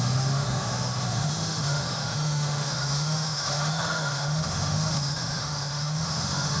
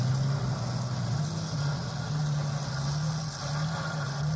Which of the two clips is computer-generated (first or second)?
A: first